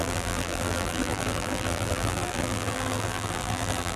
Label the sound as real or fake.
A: fake